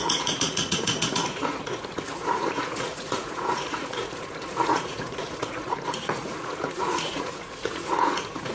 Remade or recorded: remade